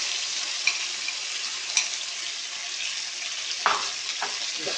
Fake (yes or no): no